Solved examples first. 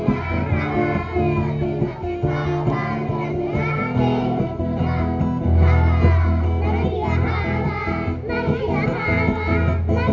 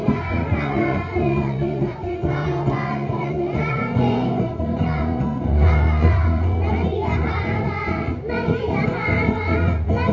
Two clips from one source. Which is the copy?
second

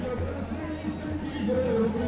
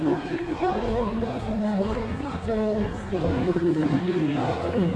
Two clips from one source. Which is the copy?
second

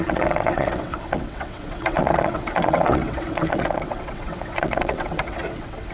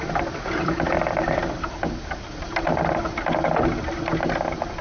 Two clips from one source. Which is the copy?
first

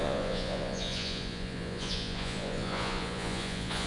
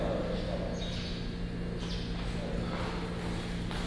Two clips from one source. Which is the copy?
first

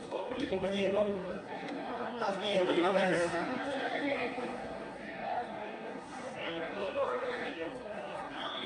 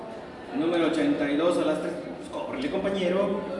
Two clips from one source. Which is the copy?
first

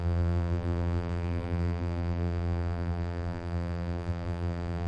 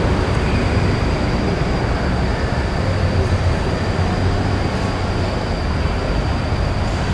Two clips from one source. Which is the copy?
first